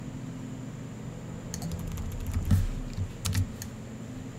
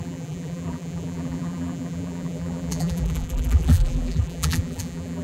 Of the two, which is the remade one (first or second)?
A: second